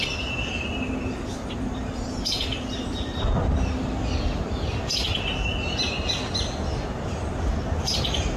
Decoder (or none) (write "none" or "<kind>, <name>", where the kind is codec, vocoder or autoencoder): none